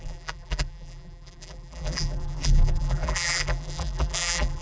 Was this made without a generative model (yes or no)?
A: no